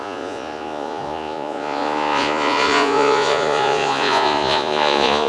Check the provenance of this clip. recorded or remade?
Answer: remade